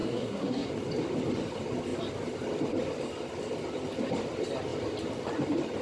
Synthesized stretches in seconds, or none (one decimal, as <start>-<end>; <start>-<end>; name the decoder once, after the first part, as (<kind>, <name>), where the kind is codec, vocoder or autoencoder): 0.0-0.7 (codec, SNAC)